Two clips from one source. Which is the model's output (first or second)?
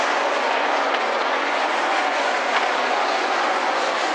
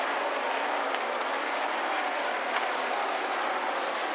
first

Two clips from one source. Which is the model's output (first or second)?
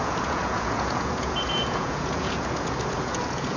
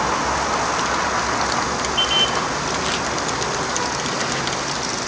first